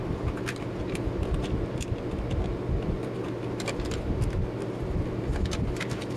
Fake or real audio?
real